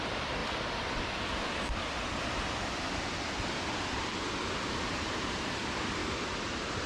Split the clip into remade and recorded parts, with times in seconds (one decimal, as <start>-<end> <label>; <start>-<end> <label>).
0.0-0.4 remade; 0.4-4.5 recorded; 4.5-6.0 remade; 6.0-6.5 recorded; 6.5-6.9 remade